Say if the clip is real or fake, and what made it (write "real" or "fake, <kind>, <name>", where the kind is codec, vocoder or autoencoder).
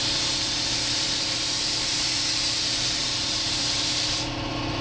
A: fake, vocoder, BigVGAN v2